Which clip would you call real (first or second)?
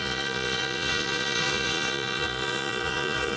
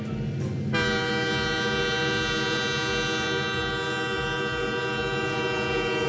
second